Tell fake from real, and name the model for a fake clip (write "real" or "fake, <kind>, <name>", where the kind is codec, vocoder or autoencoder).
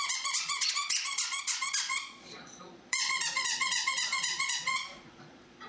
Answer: fake, vocoder, Vocos